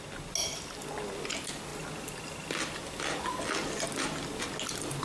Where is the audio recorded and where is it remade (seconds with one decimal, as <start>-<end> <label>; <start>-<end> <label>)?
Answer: 0.0-5.0 recorded